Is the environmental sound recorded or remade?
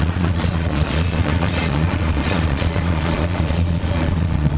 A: remade